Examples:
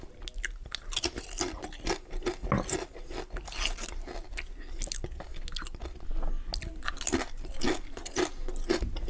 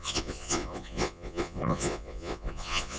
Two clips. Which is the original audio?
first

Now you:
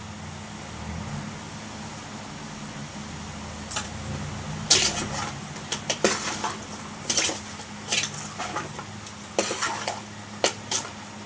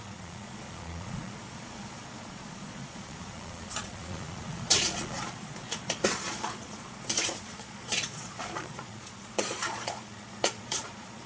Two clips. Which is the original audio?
first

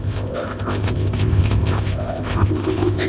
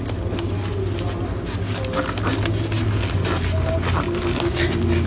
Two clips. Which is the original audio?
second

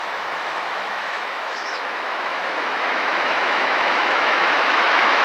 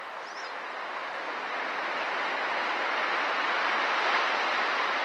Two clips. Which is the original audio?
second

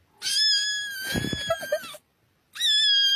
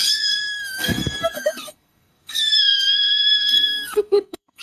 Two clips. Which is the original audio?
first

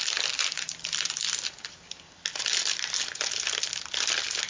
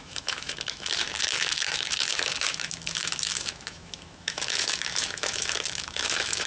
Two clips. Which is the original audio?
first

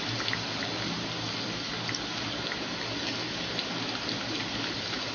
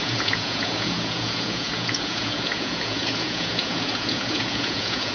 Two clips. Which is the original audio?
first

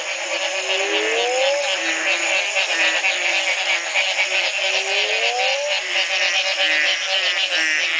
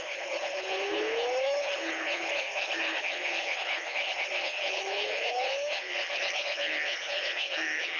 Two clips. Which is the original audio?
first